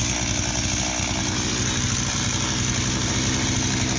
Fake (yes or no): no